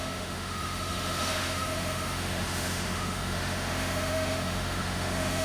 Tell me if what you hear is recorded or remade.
remade